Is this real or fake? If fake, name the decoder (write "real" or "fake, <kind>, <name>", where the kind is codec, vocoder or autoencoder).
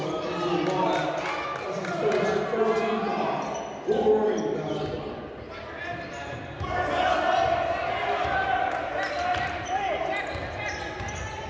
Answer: real